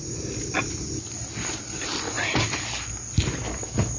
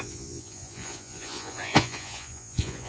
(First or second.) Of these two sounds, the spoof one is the second